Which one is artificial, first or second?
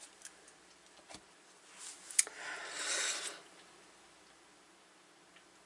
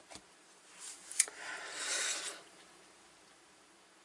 second